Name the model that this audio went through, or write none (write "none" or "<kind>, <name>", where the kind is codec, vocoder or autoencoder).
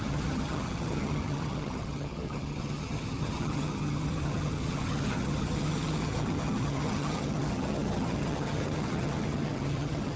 vocoder, HiFi-GAN